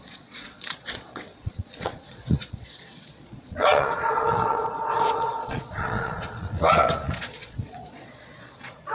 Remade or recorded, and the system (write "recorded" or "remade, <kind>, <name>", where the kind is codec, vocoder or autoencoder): remade, vocoder, Vocos